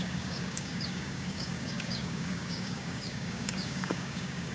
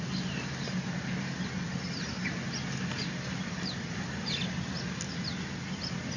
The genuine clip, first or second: second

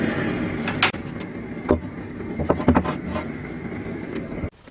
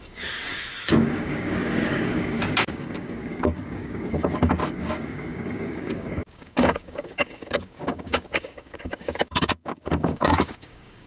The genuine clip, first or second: first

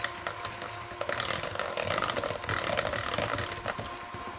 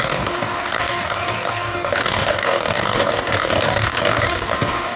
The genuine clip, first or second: first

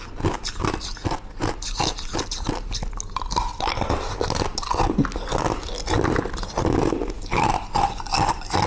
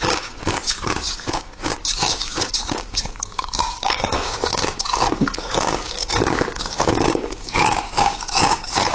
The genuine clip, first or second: first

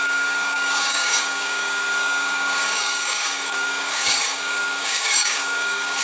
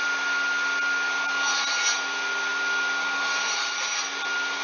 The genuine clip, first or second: second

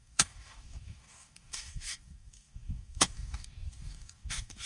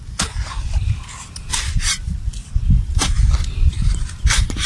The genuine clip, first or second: second